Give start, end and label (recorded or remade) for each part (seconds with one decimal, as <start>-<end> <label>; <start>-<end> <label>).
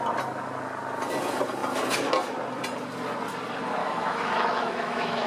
0.0-3.8 recorded; 3.8-5.3 remade